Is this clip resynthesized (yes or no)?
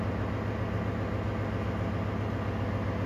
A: no